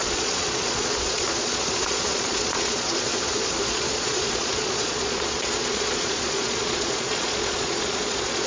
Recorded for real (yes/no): no